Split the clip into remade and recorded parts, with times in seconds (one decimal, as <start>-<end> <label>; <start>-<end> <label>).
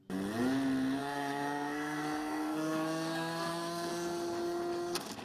0.0-1.0 recorded; 1.0-3.9 remade; 3.9-5.2 recorded